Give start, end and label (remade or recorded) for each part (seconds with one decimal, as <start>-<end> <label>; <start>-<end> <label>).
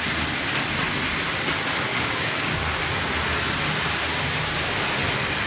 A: 0.0-1.9 recorded; 1.9-3.1 remade; 3.1-5.5 recorded